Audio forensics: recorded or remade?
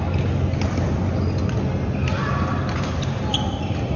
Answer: recorded